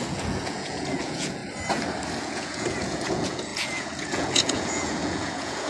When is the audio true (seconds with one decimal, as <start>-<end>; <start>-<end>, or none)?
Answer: 1.4-2.2